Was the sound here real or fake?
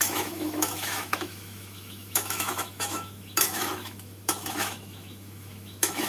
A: fake